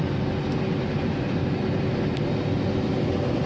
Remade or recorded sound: recorded